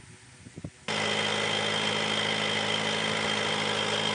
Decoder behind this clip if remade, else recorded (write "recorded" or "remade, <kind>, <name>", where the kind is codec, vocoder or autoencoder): recorded